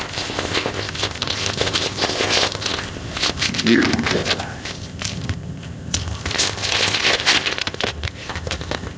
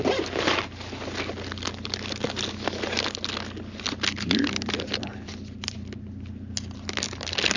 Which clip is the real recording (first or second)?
second